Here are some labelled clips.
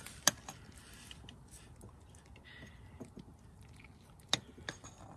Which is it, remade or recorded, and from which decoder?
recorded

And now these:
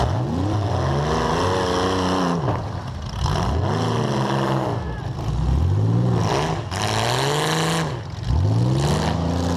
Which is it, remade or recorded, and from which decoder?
recorded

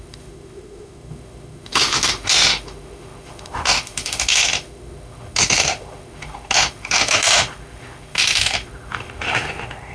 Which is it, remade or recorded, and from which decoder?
remade, autoencoder, DAC-VAE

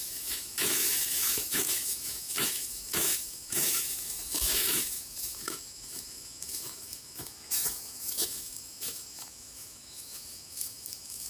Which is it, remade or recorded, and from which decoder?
remade, autoencoder, DAC-VAE